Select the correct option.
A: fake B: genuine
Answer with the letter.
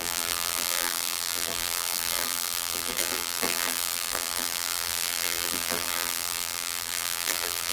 A